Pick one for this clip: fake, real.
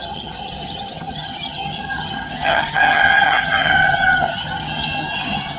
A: fake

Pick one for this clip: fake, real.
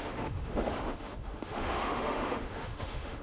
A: fake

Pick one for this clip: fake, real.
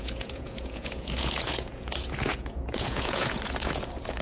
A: fake